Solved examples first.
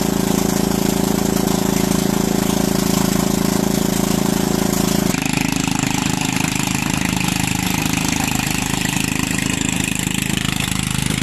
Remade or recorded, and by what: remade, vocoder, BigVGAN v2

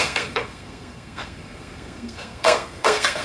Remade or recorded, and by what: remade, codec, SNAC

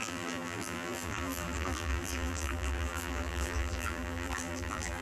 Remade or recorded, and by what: remade, vocoder, BigVGAN v2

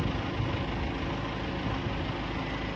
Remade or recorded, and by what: recorded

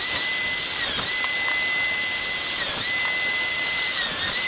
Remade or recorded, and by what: recorded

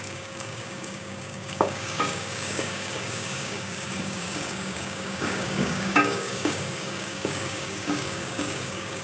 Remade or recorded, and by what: remade, codec, DAC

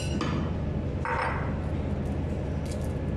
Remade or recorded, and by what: recorded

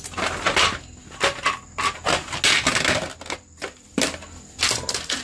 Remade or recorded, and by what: recorded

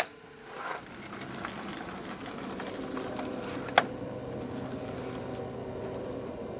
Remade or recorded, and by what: recorded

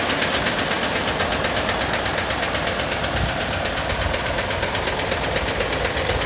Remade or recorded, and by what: recorded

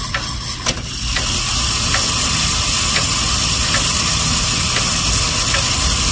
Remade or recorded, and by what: recorded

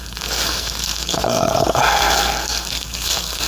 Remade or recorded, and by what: remade, codec, SNAC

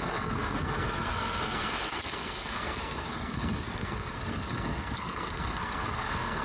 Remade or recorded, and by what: remade, codec, SNAC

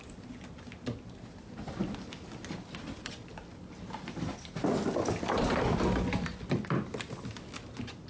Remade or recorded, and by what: recorded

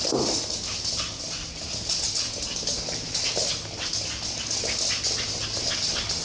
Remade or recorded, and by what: recorded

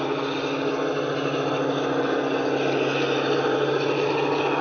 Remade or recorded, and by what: recorded